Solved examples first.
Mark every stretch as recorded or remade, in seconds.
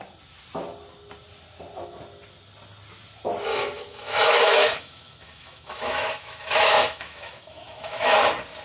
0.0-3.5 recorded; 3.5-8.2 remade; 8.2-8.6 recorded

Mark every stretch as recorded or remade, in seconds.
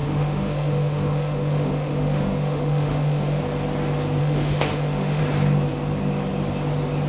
0.0-3.4 remade; 3.4-4.2 recorded; 4.2-5.2 remade; 5.2-7.1 recorded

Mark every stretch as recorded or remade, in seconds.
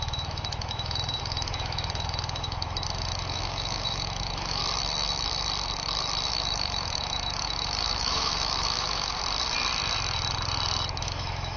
0.0-4.6 remade; 4.6-6.3 recorded; 6.3-9.2 remade; 9.2-11.0 recorded; 11.0-11.6 remade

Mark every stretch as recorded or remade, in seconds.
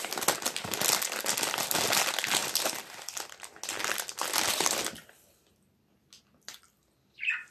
0.0-7.5 recorded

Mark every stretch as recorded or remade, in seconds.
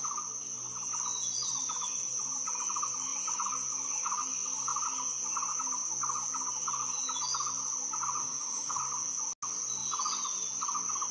0.0-8.2 recorded; 8.2-8.8 remade; 8.8-11.1 recorded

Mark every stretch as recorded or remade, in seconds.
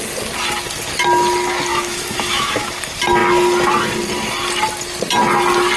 0.0-1.7 recorded; 1.7-2.7 remade; 2.7-5.8 recorded